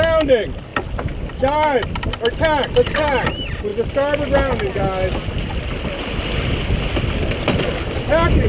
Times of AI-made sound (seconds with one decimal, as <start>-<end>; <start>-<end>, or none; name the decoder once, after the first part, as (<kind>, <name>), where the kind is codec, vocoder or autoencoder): none

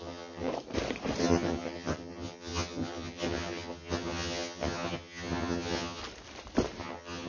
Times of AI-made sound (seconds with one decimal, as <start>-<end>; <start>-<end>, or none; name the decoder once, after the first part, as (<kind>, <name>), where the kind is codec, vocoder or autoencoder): 0.0-0.5 (vocoder, HiFi-GAN); 1.2-6.0; 6.8-7.3

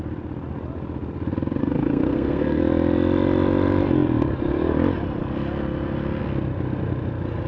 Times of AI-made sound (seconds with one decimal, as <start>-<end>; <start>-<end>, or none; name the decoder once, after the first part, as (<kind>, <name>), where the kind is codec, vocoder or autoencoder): 1.6-2.6 (codec, SNAC)

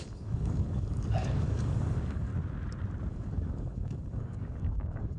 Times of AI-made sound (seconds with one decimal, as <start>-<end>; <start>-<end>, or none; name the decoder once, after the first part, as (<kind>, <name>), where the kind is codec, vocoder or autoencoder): 0.0-2.3 (codec, DAC); 3.1-5.2

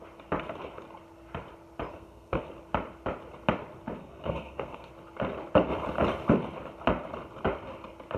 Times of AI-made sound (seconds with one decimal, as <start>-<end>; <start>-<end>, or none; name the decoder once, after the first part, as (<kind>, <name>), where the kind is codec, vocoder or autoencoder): 1.9-2.5 (codec, SNAC); 4.0-4.9

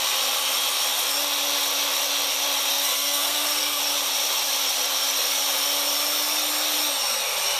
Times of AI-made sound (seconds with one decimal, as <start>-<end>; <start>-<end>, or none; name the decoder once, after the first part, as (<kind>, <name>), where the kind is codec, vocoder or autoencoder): 2.7-3.8 (codec, SNAC)

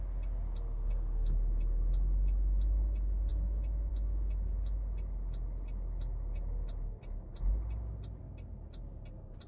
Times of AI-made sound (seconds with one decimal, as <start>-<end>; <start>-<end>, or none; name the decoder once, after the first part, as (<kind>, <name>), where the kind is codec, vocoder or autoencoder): none

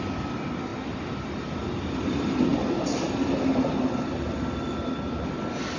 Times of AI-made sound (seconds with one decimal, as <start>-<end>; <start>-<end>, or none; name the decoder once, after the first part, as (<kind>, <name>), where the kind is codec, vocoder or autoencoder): none